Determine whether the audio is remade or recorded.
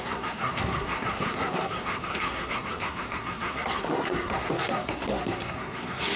remade